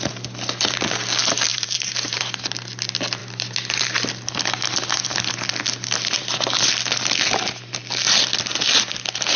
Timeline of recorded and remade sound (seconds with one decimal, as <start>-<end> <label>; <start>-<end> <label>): 0.0-1.5 recorded; 1.5-2.2 remade; 2.2-9.4 recorded